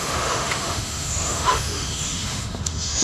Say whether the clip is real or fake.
fake